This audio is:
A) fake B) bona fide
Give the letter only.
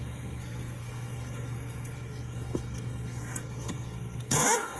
A